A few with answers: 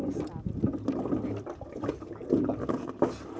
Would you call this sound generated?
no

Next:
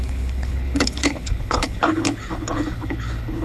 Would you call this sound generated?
yes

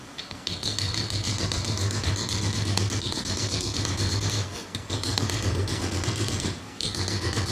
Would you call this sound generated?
yes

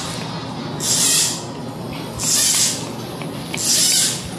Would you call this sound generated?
no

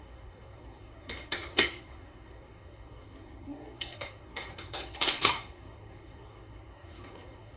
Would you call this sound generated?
yes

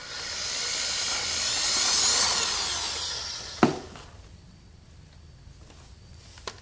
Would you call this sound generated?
no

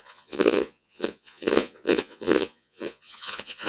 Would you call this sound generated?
yes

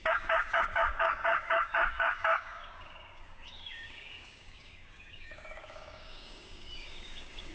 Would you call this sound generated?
yes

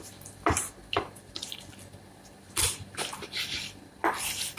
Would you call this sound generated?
no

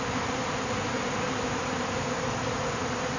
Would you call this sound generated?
no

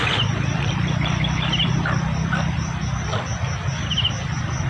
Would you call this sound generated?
no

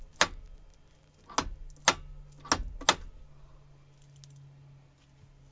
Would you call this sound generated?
no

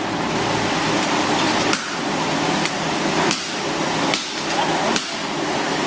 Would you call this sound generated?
no